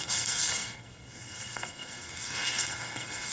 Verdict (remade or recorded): remade